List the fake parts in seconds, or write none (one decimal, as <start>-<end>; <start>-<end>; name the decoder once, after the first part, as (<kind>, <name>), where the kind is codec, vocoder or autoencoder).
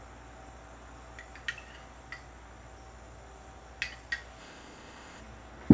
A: 4.4-5.2 (codec, ZipCodec)